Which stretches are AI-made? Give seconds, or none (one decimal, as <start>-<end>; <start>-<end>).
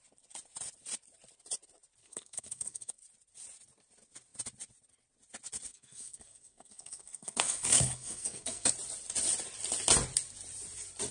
2.0-3.0; 5.7-8.7